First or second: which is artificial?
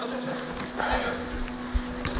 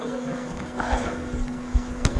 second